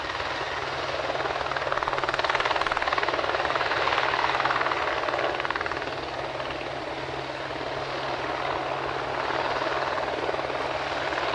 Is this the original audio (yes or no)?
yes